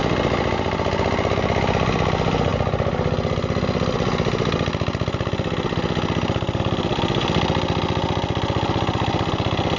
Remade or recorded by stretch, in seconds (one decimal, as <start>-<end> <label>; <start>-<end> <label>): 0.0-9.8 recorded